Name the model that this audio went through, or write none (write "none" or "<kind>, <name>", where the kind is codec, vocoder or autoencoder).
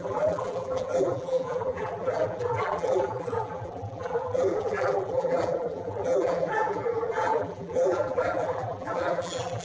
vocoder, BigVGAN v2